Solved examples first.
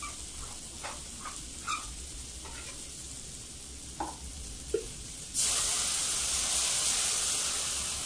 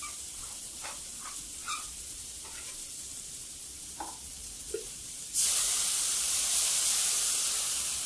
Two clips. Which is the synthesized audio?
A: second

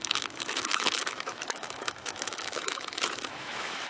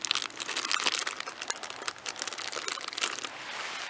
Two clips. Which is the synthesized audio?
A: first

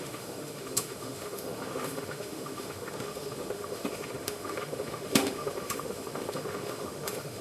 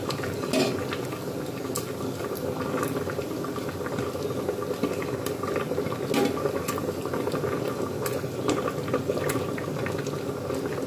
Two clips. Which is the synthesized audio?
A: first